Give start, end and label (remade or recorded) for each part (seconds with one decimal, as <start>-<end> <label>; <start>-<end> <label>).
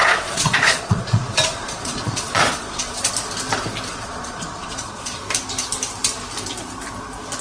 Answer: 0.0-3.1 remade; 3.1-3.9 recorded; 3.9-5.2 remade; 5.2-7.4 recorded